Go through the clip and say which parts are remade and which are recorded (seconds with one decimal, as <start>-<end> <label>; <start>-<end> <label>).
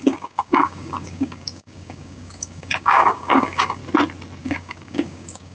0.0-3.8 remade; 3.8-4.4 recorded; 4.4-5.5 remade